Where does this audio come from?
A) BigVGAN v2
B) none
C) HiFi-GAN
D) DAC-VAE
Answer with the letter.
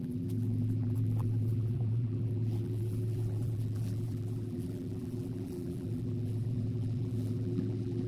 A